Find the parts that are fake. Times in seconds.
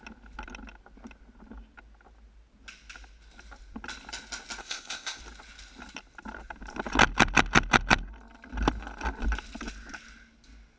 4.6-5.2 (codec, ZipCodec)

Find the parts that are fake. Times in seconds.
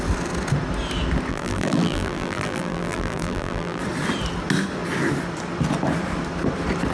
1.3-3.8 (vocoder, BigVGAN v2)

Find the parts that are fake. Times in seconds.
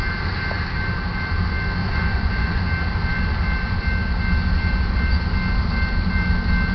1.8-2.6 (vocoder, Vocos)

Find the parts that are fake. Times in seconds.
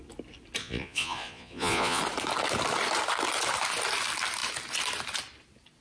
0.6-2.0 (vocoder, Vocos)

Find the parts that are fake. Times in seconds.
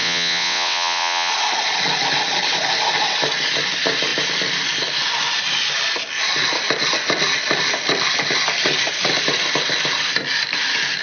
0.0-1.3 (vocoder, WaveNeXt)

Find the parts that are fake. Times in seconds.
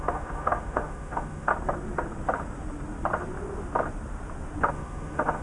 0.0-1.5 (autoencoder, DAC-VAE); 4.7-5.4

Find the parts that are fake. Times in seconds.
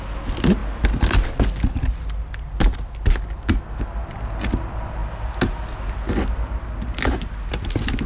none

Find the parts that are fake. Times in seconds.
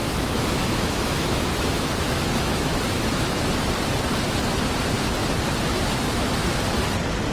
0.0-3.5 (autoencoder, DAC-VAE)